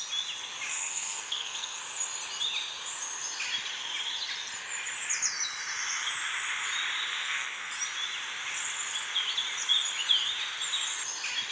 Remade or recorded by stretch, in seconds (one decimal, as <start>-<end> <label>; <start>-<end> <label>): 0.0-0.7 recorded; 0.7-1.8 remade; 1.8-7.1 recorded; 7.1-7.7 remade; 7.7-11.5 recorded